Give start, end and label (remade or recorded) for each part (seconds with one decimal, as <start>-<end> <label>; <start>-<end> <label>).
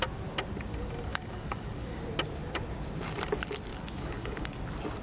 0.0-1.1 recorded; 1.1-2.0 remade; 2.0-3.7 recorded; 3.7-4.6 remade; 4.6-5.0 recorded